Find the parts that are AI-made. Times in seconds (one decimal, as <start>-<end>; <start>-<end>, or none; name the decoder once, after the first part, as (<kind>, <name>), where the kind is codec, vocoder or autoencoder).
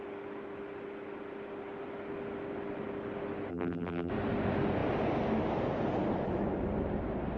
3.5-4.1 (vocoder, BigVGAN v2)